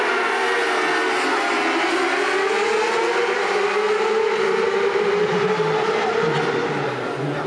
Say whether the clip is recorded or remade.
recorded